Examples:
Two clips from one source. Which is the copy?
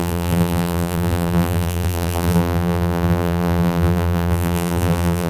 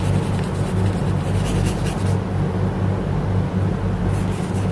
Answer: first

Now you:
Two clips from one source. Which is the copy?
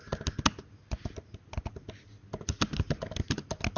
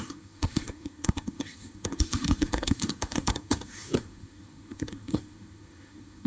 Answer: second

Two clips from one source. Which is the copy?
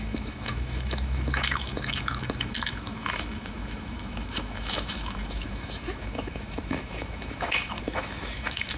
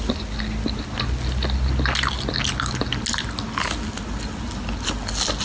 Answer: first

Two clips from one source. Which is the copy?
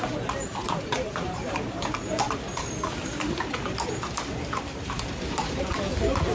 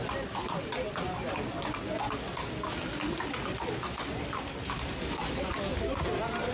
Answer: first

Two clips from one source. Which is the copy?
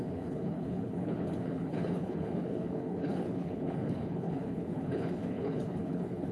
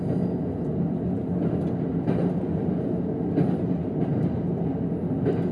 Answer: first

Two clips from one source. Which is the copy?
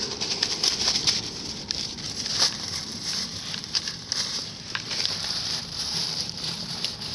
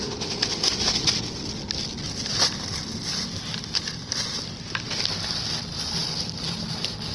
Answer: first